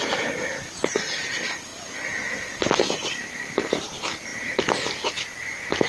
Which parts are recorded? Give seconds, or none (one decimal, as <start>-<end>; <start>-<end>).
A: 0.0-5.9

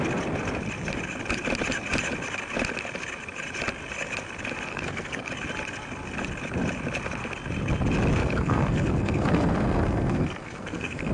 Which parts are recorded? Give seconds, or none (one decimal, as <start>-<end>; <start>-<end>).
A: 0.0-4.7; 5.3-8.2